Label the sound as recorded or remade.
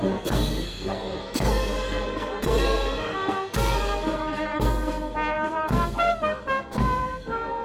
remade